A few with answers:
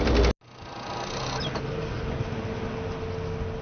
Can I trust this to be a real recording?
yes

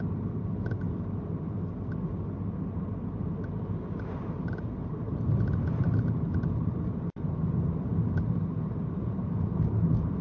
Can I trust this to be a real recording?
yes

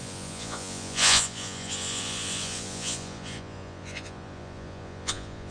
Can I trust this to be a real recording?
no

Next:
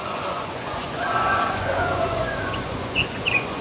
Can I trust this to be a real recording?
no